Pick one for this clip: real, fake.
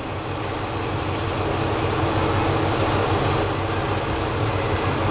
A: real